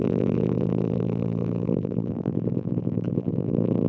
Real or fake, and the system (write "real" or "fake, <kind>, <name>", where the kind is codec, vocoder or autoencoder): fake, vocoder, BigVGAN v2